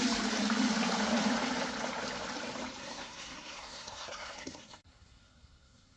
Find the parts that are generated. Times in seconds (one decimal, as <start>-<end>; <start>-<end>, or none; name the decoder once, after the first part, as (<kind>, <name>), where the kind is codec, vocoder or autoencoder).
2.8-6.0 (codec, SNAC)

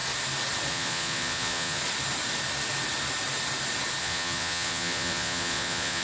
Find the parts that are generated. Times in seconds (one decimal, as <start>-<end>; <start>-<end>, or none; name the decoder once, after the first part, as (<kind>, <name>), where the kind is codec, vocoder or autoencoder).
0.7-1.8 (vocoder, Vocos); 4.0-6.0

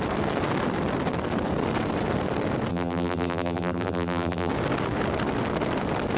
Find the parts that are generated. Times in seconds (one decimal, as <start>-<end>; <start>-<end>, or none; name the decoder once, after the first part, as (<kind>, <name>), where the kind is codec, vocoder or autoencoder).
2.7-4.5 (vocoder, BigVGAN v2)

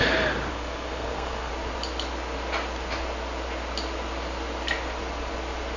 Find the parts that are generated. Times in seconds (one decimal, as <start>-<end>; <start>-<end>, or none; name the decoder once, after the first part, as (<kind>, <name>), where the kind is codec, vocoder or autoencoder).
0.5-1.5 (codec, SNAC)

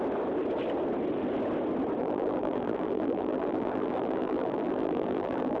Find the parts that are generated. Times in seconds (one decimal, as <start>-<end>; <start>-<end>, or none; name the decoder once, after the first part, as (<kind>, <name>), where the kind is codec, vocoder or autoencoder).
2.0-5.6 (vocoder, BigVGAN v2)